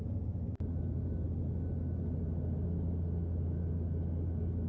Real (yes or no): yes